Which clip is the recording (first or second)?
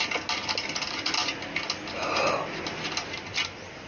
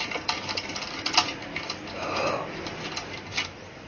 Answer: first